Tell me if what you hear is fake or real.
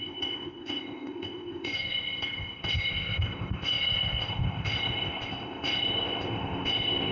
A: fake